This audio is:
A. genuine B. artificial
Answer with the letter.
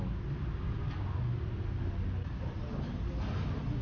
A